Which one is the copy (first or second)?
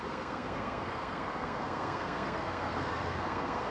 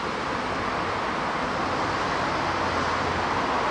first